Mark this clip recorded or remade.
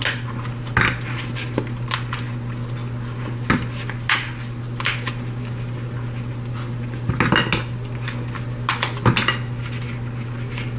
recorded